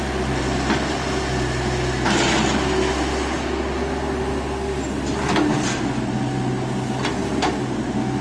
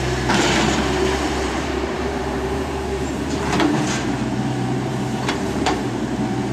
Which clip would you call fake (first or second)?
second